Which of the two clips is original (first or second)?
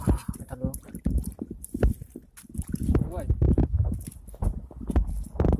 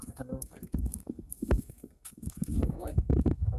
first